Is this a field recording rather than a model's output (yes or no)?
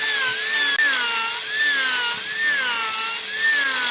yes